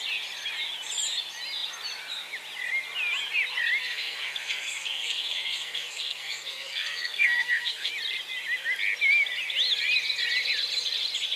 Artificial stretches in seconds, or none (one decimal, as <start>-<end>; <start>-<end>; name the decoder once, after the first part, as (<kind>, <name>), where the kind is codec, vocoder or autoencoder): 3.8-7.9 (codec, SNAC)